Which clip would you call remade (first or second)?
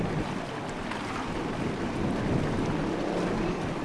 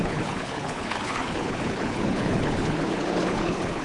second